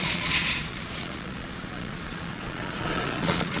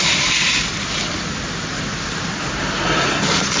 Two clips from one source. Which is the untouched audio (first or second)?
second